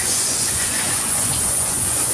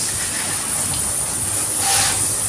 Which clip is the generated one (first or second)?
first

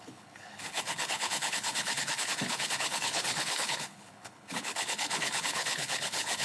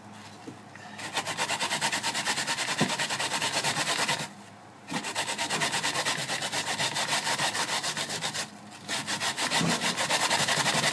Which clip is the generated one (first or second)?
first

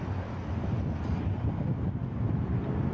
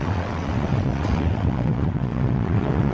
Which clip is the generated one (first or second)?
second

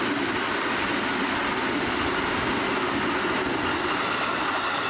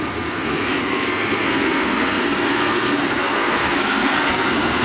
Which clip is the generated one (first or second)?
second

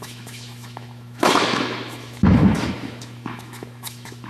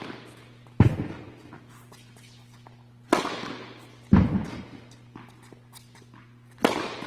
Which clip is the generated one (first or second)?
first